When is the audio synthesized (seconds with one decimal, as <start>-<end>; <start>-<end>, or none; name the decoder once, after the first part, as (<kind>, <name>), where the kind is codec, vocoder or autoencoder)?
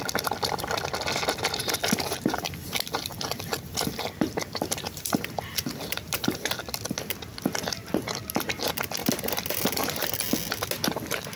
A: none